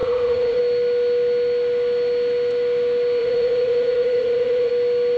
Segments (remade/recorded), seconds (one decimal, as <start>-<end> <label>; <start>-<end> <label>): 0.0-0.6 remade; 0.6-3.2 recorded; 3.2-4.7 remade; 4.7-5.2 recorded